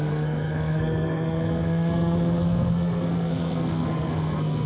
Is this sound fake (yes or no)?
yes